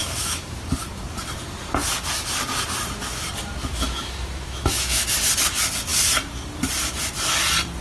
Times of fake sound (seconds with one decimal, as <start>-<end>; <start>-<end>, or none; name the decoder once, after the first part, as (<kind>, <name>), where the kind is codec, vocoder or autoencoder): 0.0-0.6 (autoencoder, DAC-VAE); 3.6-5.1